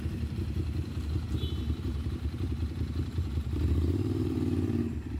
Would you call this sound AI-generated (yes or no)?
yes